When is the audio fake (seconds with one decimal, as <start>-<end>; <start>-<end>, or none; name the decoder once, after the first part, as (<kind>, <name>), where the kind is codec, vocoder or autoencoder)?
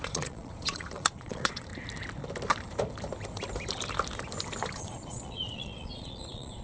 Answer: 0.0-1.7 (vocoder, Vocos); 4.8-6.6